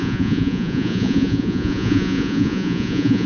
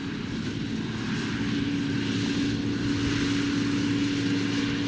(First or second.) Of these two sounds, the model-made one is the first